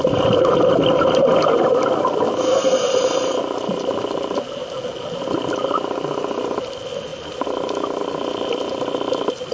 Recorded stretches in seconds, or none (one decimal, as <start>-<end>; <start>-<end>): 0.0-9.5